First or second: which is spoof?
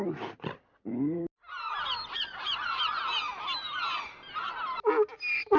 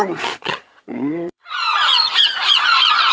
second